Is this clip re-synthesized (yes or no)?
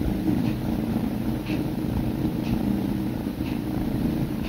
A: yes